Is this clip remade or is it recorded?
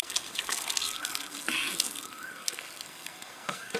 remade